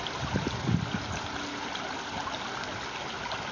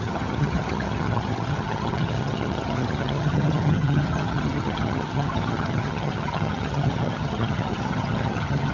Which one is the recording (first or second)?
first